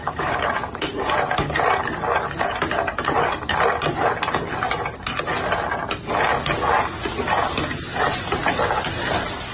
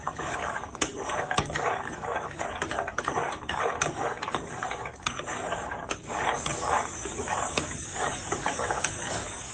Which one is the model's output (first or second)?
second